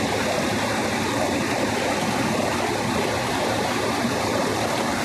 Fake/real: fake